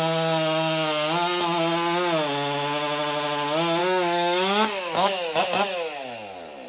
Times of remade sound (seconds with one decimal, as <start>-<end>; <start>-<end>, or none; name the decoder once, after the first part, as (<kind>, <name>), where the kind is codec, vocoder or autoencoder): 3.8-5.4 (codec, DAC)